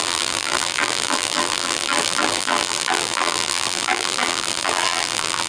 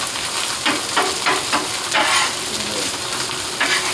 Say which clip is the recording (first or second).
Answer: second